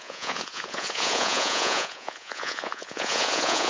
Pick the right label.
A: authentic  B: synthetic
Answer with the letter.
B